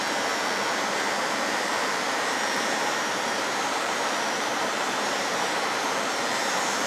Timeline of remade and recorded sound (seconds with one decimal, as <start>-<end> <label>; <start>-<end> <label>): 0.0-1.2 recorded; 1.2-6.9 remade